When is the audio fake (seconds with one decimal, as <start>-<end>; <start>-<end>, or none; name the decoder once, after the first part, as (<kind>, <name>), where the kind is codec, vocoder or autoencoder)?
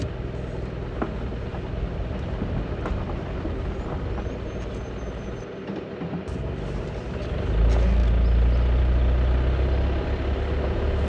1.5-2.0 (vocoder, BigVGAN v2)